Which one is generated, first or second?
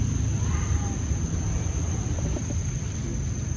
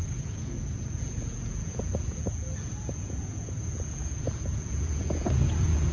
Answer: second